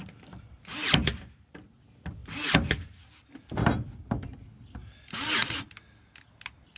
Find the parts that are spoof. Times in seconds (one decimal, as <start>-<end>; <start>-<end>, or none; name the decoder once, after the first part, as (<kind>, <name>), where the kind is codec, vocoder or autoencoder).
0.0-2.2 (vocoder, BigVGAN v2); 6.3-6.8